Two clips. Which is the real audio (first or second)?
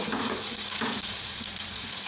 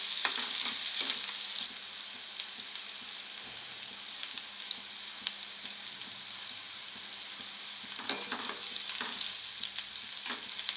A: second